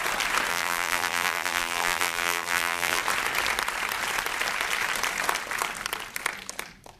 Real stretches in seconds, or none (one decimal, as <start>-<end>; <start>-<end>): 0.0-0.5; 3.0-7.0